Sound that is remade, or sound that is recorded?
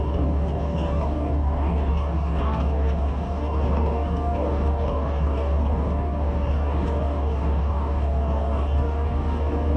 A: remade